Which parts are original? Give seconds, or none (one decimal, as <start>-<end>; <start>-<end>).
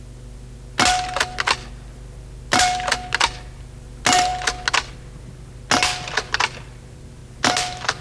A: 0.0-8.0